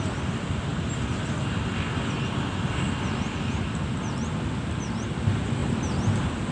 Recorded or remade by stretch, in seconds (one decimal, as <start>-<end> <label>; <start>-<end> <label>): 0.0-6.5 recorded